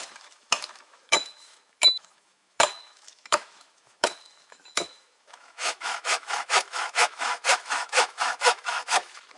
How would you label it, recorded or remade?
remade